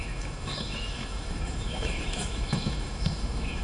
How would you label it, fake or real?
fake